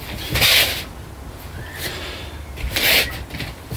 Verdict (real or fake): real